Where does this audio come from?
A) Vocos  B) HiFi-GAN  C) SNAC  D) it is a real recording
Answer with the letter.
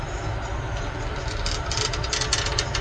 D